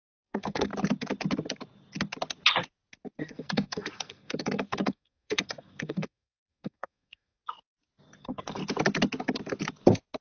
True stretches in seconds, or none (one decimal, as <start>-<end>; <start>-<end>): 0.7-3.2; 7.4-8.2; 8.6-10.2